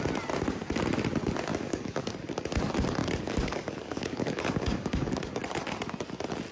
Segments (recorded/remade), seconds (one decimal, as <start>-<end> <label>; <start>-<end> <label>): 0.0-1.5 recorded; 1.5-2.1 remade; 2.1-3.0 recorded; 3.0-5.4 remade; 5.4-6.5 recorded